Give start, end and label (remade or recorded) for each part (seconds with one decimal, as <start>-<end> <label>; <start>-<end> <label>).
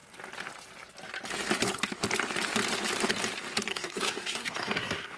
0.0-3.7 recorded; 3.7-5.2 remade